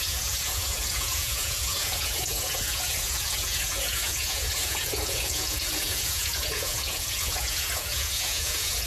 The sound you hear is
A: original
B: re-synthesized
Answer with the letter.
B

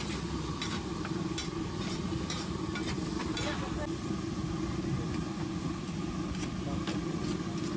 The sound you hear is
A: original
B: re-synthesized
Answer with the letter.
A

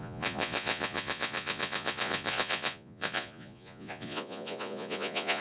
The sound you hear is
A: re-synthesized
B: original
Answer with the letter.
A